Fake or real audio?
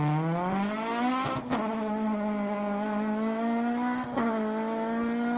real